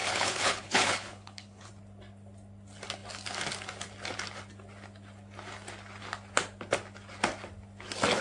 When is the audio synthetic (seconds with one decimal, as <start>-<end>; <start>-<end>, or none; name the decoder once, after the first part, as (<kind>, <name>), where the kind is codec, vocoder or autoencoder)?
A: 0.0-1.7 (codec, HILCodec)